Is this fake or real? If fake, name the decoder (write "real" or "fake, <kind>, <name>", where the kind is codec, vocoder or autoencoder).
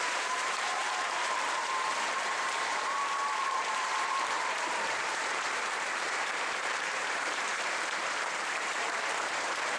fake, vocoder, BigVGAN v2